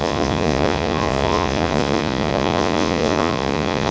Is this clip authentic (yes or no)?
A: no